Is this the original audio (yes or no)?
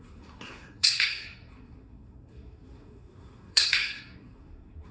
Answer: no